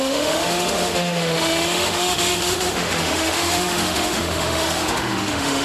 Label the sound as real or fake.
fake